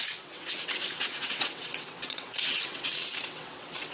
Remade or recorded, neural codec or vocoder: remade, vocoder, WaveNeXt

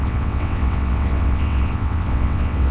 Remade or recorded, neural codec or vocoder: remade, vocoder, WaveNeXt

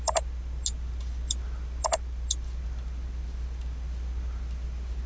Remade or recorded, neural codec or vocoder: recorded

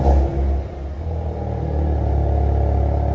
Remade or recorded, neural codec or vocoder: recorded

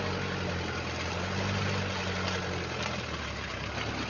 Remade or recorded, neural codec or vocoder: recorded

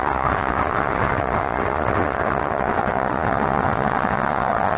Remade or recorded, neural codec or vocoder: remade, vocoder, WaveNeXt